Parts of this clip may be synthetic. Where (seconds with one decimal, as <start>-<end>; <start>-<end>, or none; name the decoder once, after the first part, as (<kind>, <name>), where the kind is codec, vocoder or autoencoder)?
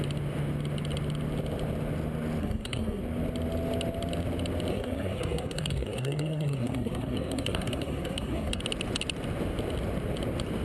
2.4-3.0 (codec, SNAC); 4.7-8.6